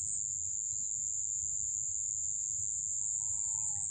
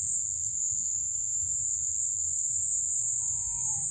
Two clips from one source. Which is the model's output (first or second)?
second